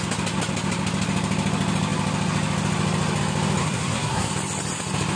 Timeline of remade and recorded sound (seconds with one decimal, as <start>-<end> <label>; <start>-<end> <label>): 0.0-3.6 recorded; 3.6-4.3 remade; 4.3-5.2 recorded